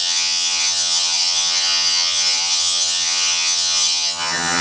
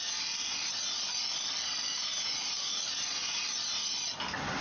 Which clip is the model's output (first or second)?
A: first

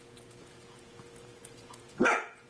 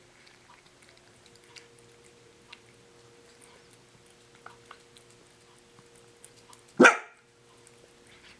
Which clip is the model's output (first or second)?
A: first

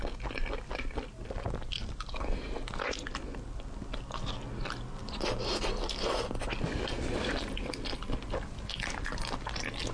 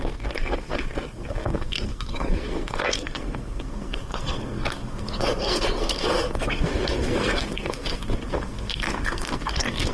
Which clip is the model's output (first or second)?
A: second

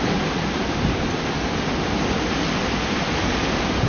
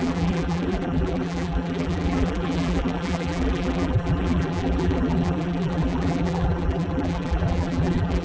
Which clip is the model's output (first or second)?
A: second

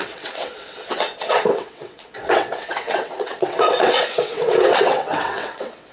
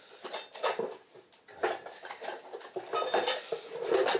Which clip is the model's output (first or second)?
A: first